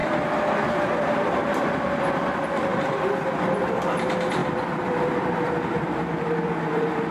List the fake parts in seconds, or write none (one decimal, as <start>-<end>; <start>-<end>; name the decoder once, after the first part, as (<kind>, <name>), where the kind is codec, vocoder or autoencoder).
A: 0.9-7.1 (vocoder, BigVGAN v2)